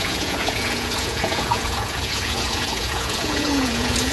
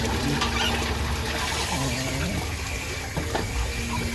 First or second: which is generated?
first